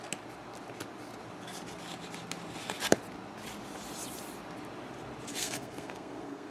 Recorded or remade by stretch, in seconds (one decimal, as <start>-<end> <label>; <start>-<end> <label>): 0.0-5.3 recorded; 5.3-6.5 remade